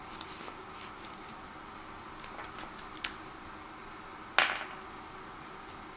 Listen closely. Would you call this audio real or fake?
real